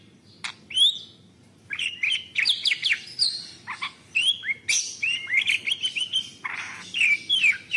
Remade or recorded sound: recorded